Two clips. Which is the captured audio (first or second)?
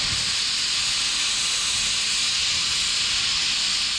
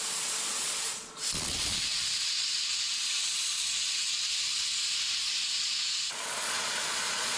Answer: first